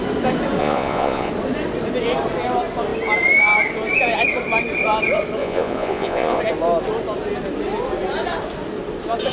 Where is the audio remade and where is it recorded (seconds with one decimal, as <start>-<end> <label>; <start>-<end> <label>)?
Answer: 0.0-0.6 recorded; 0.6-1.3 remade; 1.3-5.4 recorded; 5.4-6.4 remade; 6.4-9.3 recorded